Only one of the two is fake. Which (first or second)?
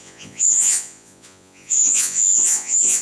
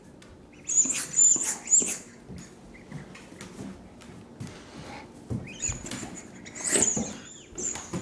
first